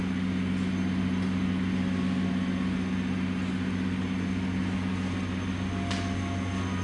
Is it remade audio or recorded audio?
recorded